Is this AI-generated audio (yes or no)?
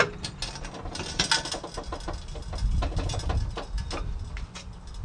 no